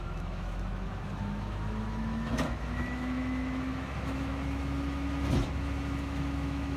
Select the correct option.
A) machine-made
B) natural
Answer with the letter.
A